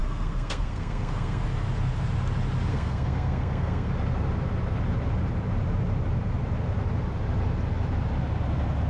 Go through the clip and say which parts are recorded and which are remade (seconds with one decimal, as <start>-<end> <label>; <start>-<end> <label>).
0.0-1.4 remade; 1.4-2.7 recorded; 2.7-3.9 remade; 3.9-8.9 recorded